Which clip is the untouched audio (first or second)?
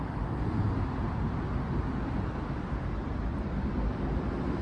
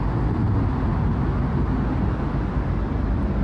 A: second